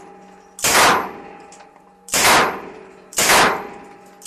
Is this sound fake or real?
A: real